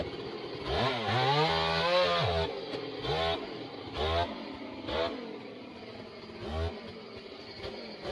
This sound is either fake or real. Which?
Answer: real